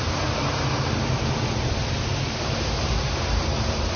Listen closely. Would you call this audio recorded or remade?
remade